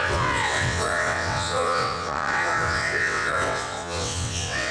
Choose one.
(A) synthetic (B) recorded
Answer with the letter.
A